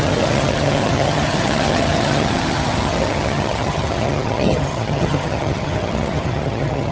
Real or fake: fake